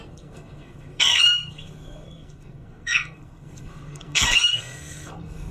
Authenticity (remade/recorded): remade